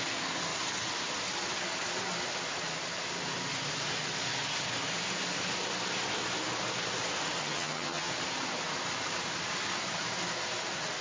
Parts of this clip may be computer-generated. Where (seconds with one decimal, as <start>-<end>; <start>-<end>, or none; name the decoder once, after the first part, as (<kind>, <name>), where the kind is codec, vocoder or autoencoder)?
7.4-8.1 (vocoder, HiFi-GAN)